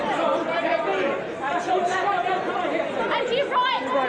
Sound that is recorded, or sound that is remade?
remade